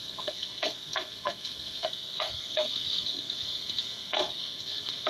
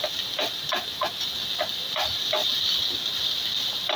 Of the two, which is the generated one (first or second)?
first